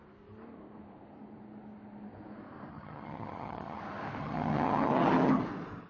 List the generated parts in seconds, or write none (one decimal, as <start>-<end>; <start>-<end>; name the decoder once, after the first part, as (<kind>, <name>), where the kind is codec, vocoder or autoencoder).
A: 2.7-3.8 (vocoder, HiFi-GAN); 4.2-5.4